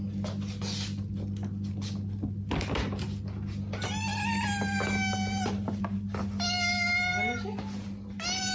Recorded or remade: recorded